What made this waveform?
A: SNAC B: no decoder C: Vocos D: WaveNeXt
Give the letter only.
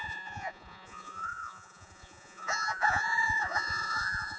C